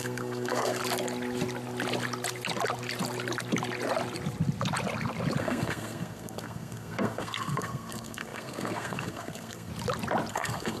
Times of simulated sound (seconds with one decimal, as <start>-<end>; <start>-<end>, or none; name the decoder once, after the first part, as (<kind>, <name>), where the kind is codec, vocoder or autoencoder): 0.0-0.8 (codec, SNAC); 5.4-9.7; 10.3-10.8